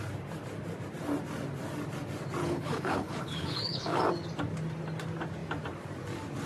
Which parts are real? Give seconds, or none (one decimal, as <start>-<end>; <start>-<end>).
0.0-2.4; 4.0-6.5